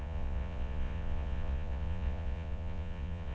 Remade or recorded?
remade